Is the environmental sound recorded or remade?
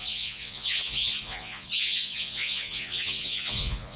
remade